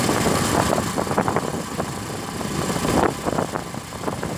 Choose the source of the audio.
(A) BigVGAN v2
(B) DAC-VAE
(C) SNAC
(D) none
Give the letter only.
A